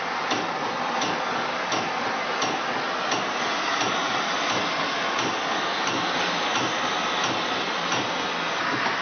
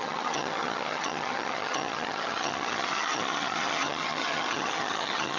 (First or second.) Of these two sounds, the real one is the first